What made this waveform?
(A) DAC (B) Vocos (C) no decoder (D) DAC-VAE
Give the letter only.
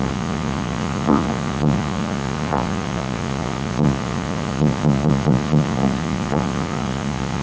B